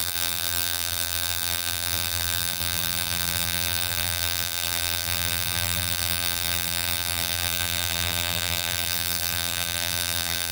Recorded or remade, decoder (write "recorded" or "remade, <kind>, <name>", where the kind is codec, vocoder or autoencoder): remade, vocoder, BigVGAN v2